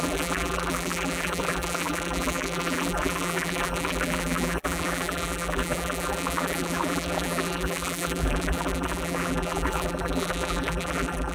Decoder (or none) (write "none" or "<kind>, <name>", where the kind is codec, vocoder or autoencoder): vocoder, BigVGAN v2